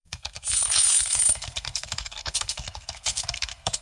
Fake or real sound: fake